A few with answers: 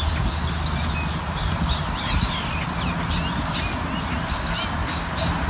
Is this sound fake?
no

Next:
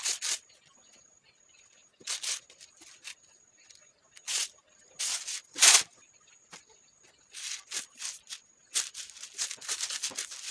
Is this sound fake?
no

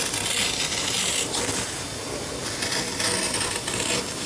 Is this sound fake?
no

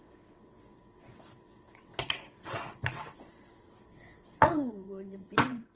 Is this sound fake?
yes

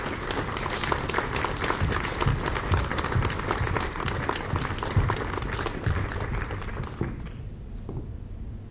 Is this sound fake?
no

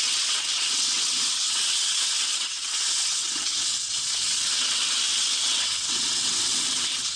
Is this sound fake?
yes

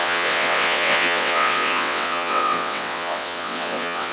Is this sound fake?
yes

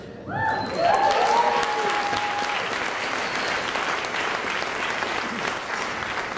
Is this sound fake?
no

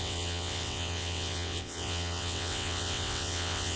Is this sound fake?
yes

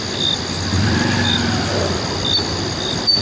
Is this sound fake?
no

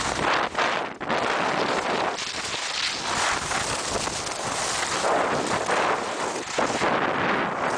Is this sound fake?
no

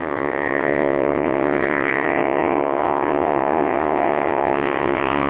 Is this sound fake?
yes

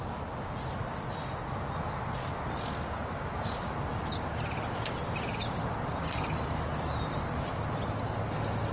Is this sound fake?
no